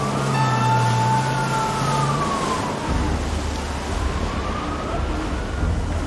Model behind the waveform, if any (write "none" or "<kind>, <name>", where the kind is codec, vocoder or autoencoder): none